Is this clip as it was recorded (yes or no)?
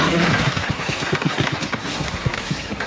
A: no